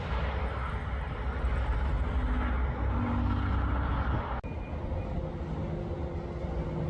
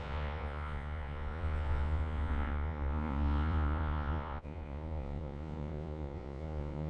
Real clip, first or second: first